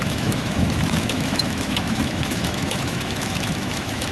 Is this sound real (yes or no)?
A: no